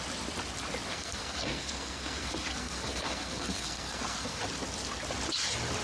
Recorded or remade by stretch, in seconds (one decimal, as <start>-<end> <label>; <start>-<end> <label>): 0.0-0.9 recorded; 0.9-4.4 remade; 4.4-5.8 recorded